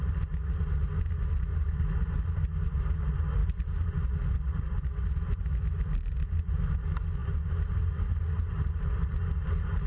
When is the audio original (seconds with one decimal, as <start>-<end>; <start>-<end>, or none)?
0.0-9.9